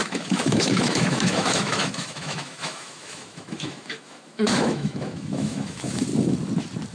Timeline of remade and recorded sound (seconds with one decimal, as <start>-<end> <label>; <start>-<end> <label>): 0.0-6.1 remade; 6.1-6.9 recorded